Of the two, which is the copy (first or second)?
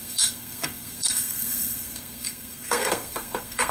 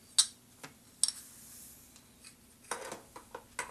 first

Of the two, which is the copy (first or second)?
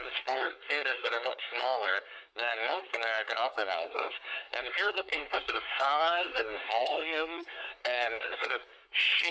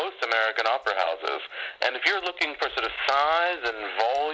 first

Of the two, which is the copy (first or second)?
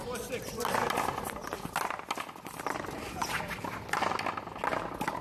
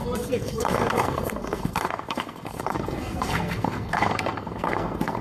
second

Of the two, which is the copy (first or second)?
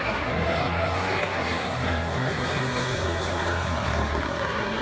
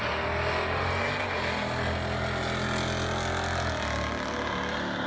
first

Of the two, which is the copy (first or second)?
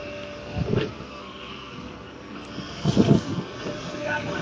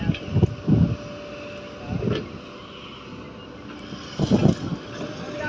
first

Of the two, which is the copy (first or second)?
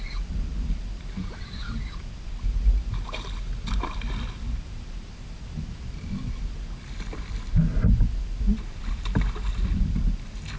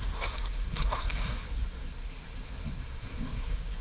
second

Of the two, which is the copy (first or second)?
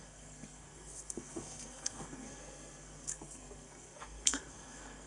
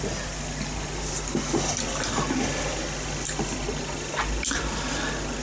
first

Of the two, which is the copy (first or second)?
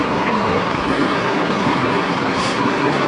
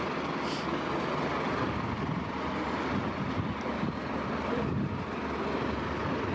first